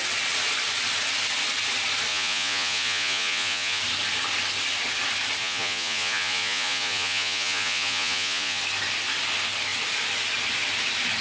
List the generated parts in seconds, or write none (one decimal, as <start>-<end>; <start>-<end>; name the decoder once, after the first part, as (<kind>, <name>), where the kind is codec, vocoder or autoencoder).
2.1-3.8 (vocoder, Vocos); 5.4-8.6